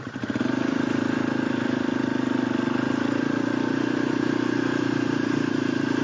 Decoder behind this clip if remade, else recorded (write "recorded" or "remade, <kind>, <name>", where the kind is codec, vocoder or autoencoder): recorded